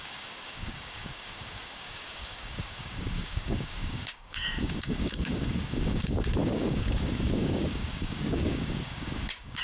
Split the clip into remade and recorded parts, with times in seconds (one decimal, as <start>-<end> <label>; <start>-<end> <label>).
0.0-9.6 remade